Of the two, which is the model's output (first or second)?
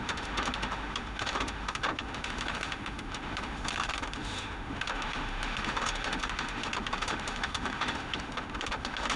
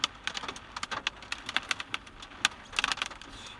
first